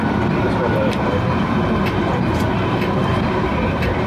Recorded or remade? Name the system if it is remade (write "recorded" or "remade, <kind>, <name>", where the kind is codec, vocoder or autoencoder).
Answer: remade, vocoder, BigVGAN v2